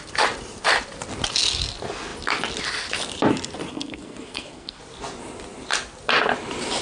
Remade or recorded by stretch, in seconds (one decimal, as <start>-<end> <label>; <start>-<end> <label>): 0.0-3.7 recorded; 3.7-4.8 remade; 4.8-6.8 recorded